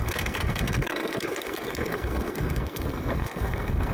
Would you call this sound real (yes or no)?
no